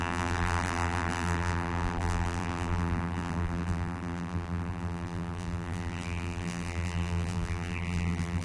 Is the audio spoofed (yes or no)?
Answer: yes